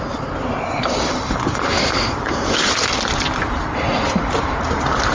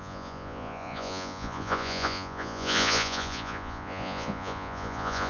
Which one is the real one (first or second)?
first